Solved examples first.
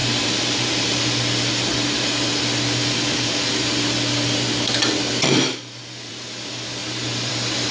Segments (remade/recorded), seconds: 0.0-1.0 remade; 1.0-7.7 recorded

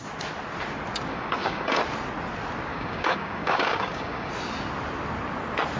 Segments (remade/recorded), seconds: 0.0-1.1 recorded; 1.1-1.8 remade; 1.8-2.7 recorded; 2.7-4.3 remade; 4.3-5.8 recorded

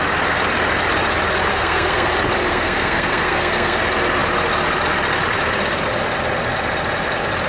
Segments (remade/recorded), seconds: 0.0-1.5 recorded; 1.5-2.1 remade; 2.1-2.5 recorded; 2.5-3.8 remade; 3.8-7.5 recorded

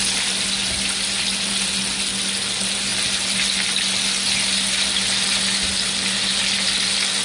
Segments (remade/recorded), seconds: 0.0-7.2 recorded

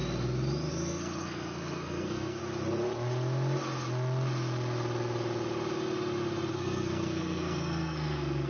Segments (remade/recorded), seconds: 0.0-0.7 recorded; 0.7-2.4 remade; 2.4-6.5 recorded; 6.5-8.5 remade

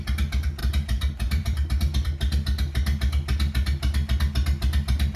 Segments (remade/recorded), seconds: 0.0-0.6 recorded; 0.6-1.7 remade; 1.7-5.2 recorded

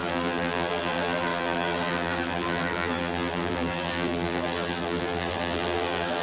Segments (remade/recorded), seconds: 0.0-6.2 remade